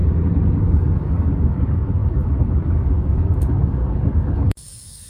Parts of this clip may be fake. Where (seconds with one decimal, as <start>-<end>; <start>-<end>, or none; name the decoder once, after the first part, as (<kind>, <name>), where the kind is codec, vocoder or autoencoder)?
0.6-5.1 (codec, DAC)